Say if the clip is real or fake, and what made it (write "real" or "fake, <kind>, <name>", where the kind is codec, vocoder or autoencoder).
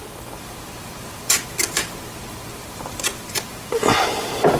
fake, vocoder, BigVGAN v2